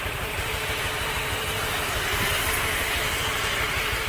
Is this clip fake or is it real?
real